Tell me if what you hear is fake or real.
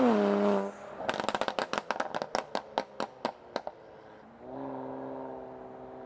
real